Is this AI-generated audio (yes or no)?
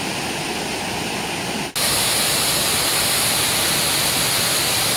no